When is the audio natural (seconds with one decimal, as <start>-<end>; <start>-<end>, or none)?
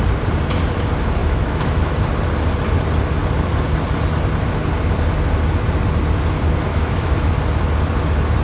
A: 0.0-1.2; 1.8-6.7; 7.3-8.4